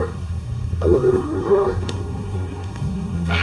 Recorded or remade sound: remade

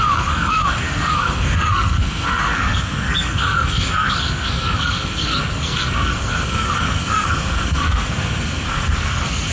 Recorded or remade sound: remade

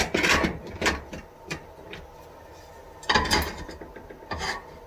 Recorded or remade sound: recorded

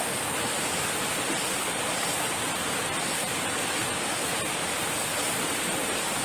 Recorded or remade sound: recorded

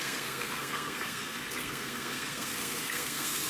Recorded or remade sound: remade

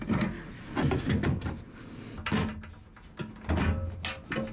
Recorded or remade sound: recorded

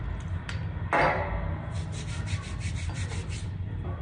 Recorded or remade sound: recorded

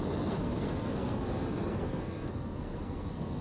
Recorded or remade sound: remade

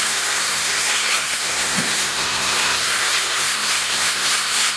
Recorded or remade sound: remade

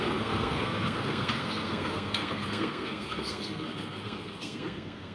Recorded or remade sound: remade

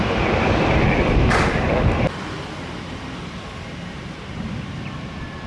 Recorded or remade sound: recorded